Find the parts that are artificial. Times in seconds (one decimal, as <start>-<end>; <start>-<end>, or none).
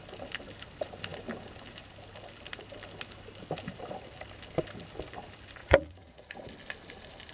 5.6-6.5